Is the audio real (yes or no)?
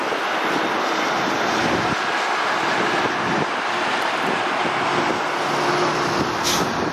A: yes